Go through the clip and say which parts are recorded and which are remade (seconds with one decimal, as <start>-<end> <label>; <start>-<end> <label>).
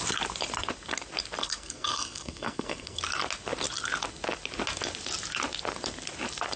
0.0-1.4 recorded; 1.4-3.0 remade; 3.0-6.6 recorded